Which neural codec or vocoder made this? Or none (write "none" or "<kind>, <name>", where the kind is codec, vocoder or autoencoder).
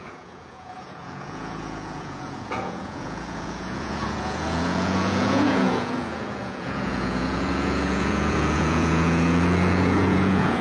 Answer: vocoder, Vocos